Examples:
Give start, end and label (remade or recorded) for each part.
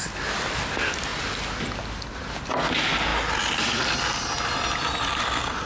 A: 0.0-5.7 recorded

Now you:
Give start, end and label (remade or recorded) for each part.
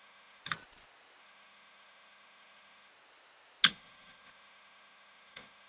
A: 0.0-0.4 remade; 0.4-1.2 recorded; 1.2-2.9 remade; 2.9-3.7 recorded; 3.7-5.7 remade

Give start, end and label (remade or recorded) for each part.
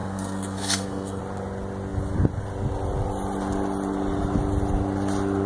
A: 0.0-1.2 remade; 1.2-5.5 recorded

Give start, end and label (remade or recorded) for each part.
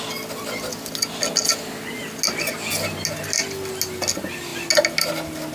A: 0.0-5.5 recorded